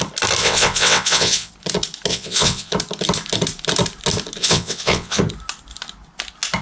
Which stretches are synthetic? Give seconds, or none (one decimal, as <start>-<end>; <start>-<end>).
0.4-1.5; 2.1-2.7; 4.4-5.2